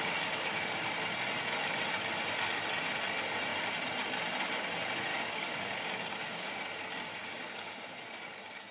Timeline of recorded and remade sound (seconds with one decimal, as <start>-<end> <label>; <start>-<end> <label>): 0.0-5.1 recorded; 5.1-6.6 remade; 6.6-7.1 recorded; 7.1-8.0 remade; 8.0-8.7 recorded